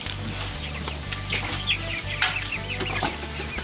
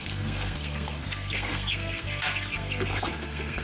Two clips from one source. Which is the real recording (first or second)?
first